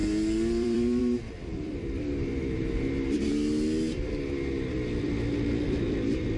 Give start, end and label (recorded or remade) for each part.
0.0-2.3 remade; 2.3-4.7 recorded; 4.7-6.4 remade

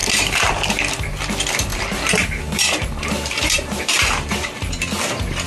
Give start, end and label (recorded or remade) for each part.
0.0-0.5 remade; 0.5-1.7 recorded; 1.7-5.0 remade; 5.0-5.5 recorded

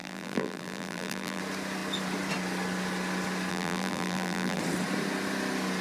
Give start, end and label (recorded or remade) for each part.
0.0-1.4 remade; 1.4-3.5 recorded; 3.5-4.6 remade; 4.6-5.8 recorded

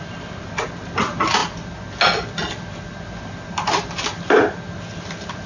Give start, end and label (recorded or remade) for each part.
0.0-5.5 recorded

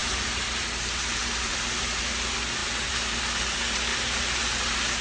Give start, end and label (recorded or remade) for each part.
0.0-2.0 remade; 2.0-2.6 recorded; 2.6-3.2 remade; 3.2-3.9 recorded; 3.9-4.4 remade; 4.4-5.0 recorded

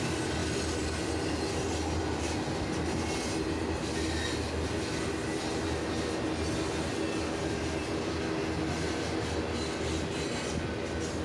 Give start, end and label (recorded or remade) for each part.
0.0-11.2 recorded

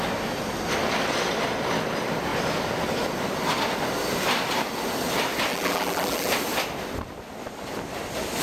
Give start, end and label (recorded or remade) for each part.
0.0-5.5 recorded; 5.5-6.3 remade; 6.3-8.4 recorded

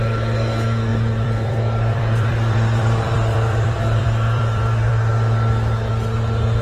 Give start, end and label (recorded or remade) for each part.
0.0-0.9 recorded; 0.9-4.9 remade; 4.9-6.6 recorded